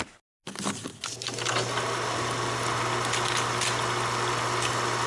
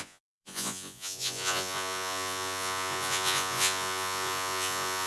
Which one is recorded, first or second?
first